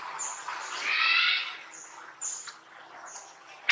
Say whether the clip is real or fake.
real